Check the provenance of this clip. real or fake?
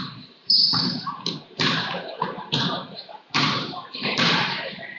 fake